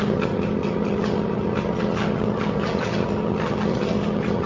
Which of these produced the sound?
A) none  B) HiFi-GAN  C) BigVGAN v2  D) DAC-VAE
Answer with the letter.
B